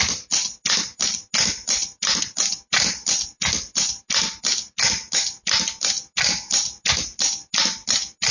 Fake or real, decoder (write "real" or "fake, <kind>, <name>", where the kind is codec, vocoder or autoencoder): real